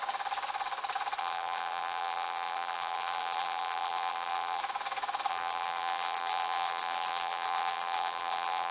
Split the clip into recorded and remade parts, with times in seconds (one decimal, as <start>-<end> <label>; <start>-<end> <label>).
0.0-1.2 recorded; 1.2-4.6 remade; 4.6-5.3 recorded; 5.3-8.7 remade